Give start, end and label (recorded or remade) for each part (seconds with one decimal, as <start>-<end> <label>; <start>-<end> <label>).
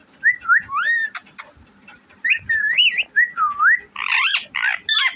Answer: 0.0-5.2 recorded